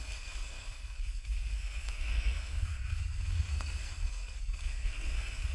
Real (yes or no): no